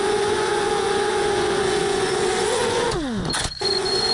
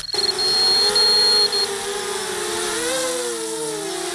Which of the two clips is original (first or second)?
second